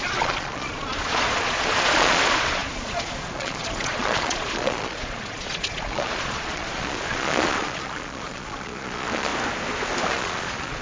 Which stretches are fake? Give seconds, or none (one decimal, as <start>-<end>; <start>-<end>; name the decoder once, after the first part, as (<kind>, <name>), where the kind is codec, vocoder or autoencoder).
0.0-9.3 (vocoder, Vocos); 10.1-10.8